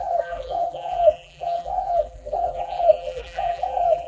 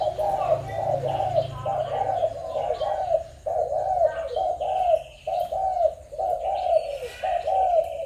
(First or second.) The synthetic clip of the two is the first